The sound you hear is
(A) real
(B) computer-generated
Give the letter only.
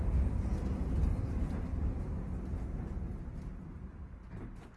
A